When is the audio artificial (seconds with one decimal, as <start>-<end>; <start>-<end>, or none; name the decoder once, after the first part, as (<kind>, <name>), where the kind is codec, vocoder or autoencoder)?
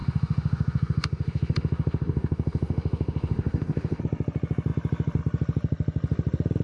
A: 0.0-4.0 (autoencoder, DAC-VAE)